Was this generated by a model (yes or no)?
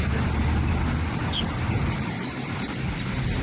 no